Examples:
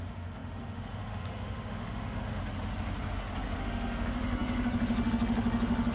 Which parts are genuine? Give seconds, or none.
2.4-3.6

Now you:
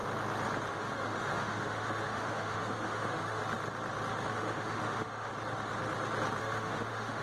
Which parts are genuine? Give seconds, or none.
0.0-0.7; 3.4-4.3; 5.3-6.4

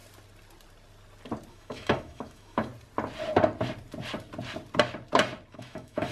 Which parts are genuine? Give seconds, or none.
0.0-1.5; 2.7-5.5